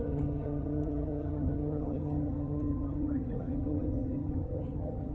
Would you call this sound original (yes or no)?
no